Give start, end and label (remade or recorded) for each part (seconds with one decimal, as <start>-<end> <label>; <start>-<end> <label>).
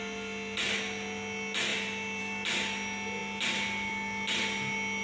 0.0-5.0 recorded